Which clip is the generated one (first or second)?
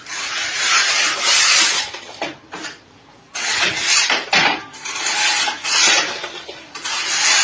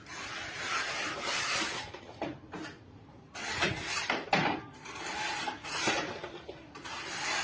second